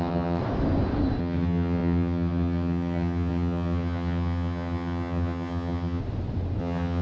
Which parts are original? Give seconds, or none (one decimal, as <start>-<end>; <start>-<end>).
0.4-1.2; 6.0-6.6